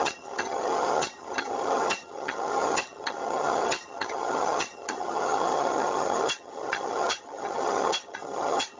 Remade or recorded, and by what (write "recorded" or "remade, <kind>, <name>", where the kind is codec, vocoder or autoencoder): remade, vocoder, HiFi-GAN